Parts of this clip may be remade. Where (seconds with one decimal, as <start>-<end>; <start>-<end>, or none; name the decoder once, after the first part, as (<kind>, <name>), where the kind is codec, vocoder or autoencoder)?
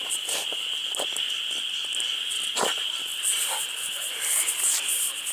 none